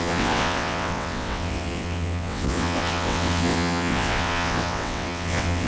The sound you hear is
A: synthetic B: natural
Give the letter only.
A